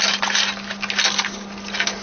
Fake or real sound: real